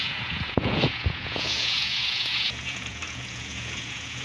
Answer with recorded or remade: remade